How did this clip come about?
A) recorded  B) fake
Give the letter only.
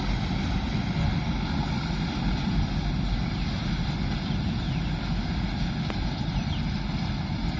A